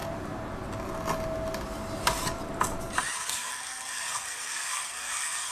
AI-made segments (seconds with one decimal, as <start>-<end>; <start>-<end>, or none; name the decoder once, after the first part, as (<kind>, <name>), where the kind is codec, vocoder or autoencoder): 3.3-5.5 (codec, SNAC)